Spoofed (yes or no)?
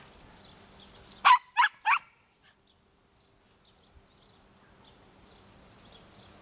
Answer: no